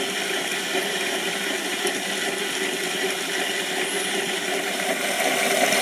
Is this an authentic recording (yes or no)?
yes